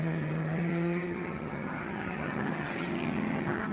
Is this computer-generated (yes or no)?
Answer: yes